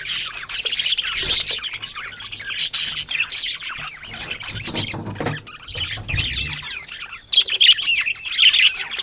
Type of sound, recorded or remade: recorded